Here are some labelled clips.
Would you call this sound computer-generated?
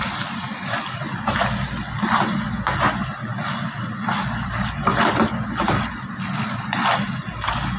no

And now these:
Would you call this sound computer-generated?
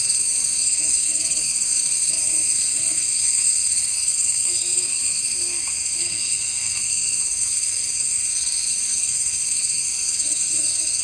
yes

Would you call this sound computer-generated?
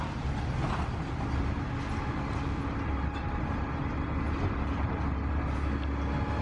no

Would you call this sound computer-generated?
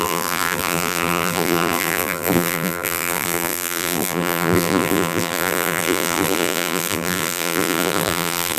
yes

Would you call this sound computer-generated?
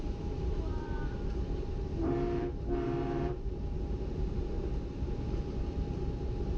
yes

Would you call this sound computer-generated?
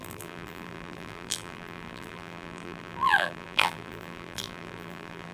yes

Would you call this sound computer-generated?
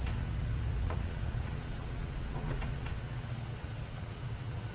yes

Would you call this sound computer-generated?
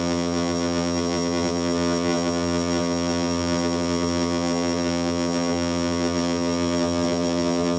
yes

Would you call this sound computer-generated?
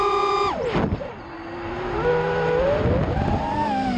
no